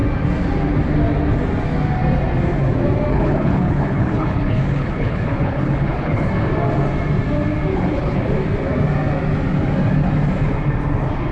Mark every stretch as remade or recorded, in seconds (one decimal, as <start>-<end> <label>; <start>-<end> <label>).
0.0-3.1 recorded; 3.1-6.3 remade; 6.3-7.7 recorded; 7.7-8.2 remade; 8.2-11.3 recorded